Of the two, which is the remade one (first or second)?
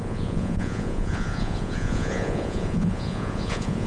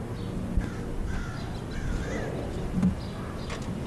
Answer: first